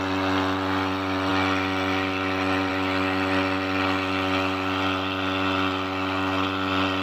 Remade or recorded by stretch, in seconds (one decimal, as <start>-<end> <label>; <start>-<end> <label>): 0.0-7.0 recorded